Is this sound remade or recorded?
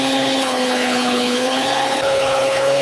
remade